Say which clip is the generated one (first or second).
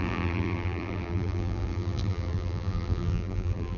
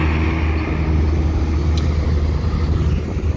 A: first